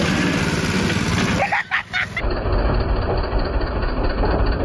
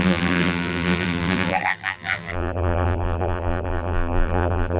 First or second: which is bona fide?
first